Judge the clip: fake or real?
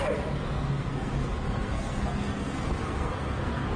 fake